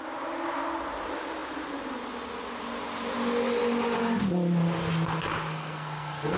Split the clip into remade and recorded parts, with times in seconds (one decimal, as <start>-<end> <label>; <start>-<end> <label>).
0.0-5.5 recorded; 5.5-6.4 remade